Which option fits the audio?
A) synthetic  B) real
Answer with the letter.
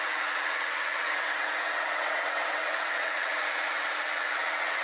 A